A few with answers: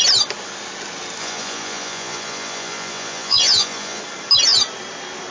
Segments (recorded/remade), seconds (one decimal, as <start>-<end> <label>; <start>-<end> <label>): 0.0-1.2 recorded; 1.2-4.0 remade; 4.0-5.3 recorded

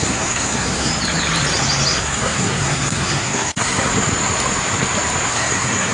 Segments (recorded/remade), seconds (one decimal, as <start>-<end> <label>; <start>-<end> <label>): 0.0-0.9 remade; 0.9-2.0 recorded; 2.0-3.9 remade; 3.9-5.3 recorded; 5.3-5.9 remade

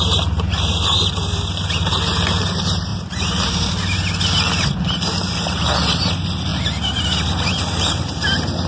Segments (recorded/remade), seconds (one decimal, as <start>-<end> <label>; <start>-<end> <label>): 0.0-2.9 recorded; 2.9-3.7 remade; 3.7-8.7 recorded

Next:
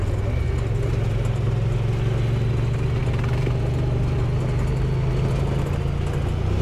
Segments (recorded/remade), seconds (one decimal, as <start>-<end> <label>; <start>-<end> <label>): 0.0-6.6 recorded

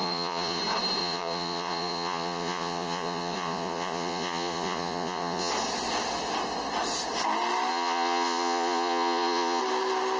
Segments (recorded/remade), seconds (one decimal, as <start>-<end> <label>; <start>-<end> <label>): 0.0-0.6 remade; 0.6-1.0 recorded; 1.0-5.5 remade; 5.5-7.7 recorded; 7.7-9.6 remade; 9.6-10.2 recorded

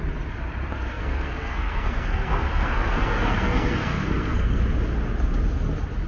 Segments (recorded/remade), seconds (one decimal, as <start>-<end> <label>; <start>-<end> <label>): 0.0-0.9 recorded; 0.9-4.6 remade; 4.6-6.1 recorded

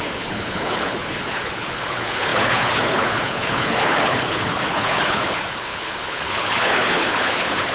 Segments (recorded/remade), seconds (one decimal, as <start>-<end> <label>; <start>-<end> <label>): 0.0-7.7 remade